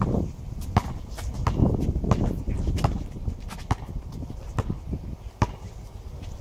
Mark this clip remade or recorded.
recorded